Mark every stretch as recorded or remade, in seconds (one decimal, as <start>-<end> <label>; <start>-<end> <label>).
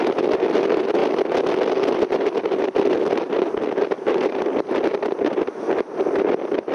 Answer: 0.0-6.7 recorded